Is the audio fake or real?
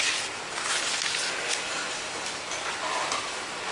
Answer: real